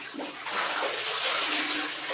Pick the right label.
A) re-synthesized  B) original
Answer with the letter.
B